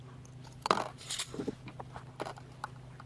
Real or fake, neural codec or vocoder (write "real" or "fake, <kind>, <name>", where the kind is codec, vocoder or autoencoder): real